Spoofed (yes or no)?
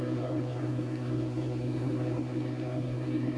yes